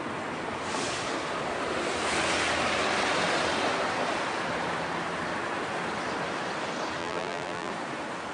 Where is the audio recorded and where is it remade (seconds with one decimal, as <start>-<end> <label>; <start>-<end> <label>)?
0.0-7.0 recorded; 7.0-7.7 remade; 7.7-8.3 recorded